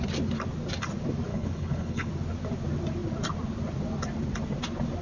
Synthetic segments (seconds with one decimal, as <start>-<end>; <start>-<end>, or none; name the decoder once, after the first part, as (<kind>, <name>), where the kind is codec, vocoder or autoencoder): 1.3-2.1 (codec, HILCodec)